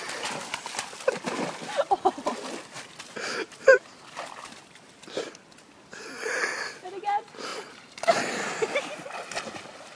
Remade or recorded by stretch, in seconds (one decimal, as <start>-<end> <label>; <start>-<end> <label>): 0.0-7.5 recorded; 7.5-8.5 remade; 8.5-9.9 recorded